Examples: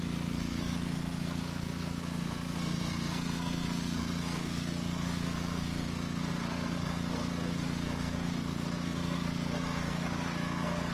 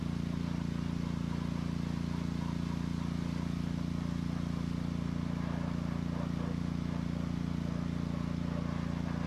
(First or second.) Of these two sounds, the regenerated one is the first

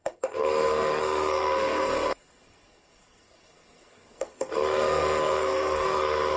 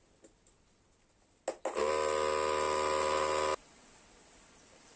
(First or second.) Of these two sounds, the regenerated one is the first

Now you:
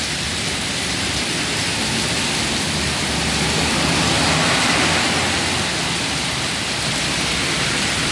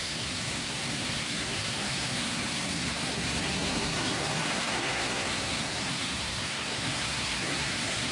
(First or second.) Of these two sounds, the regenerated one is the second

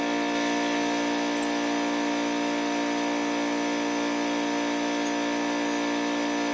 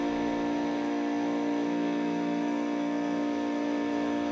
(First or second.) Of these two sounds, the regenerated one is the second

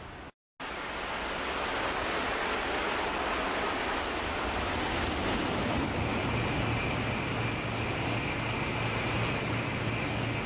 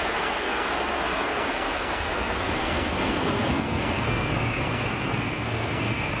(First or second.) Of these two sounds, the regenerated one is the second